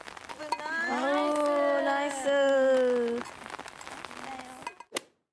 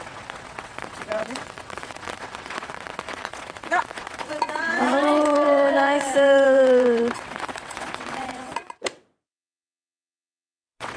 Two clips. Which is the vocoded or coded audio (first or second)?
second